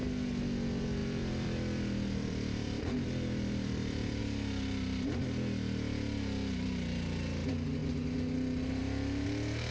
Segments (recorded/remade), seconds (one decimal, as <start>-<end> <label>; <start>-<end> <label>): 0.0-1.0 recorded; 1.0-4.2 remade; 4.2-9.7 recorded